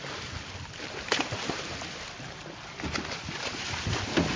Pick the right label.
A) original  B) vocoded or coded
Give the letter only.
B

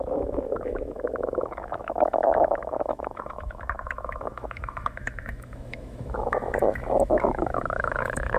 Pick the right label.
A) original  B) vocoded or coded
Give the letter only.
B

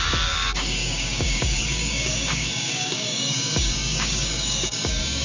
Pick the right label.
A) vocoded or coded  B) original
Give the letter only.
A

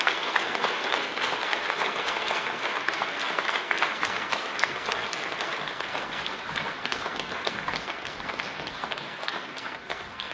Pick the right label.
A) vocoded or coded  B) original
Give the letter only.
A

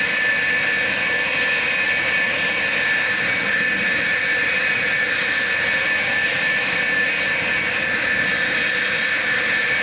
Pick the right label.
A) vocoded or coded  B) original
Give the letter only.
B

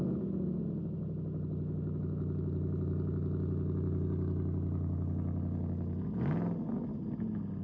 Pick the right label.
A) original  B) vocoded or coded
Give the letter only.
A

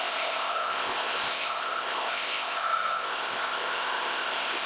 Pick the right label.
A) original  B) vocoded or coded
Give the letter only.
B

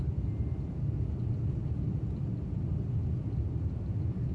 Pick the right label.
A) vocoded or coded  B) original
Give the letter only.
B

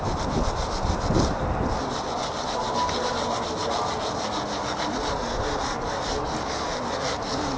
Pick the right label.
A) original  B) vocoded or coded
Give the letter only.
A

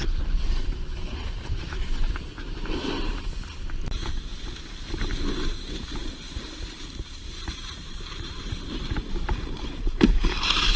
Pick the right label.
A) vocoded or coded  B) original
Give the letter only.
A